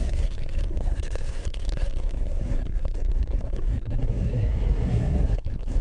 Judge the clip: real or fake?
fake